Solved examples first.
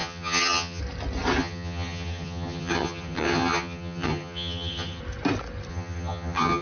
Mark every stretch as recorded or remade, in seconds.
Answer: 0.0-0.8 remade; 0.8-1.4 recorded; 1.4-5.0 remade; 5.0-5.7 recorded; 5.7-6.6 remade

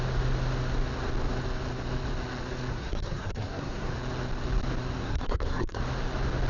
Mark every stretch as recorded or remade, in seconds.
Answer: 0.0-2.7 recorded; 2.7-3.9 remade; 3.9-5.0 recorded; 5.0-5.8 remade; 5.8-6.5 recorded